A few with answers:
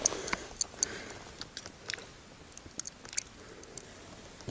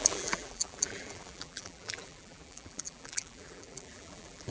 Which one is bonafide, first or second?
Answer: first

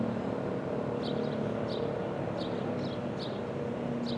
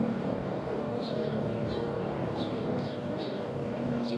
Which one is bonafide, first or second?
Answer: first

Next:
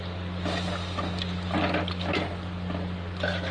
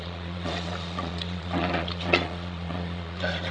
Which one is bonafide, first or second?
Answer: first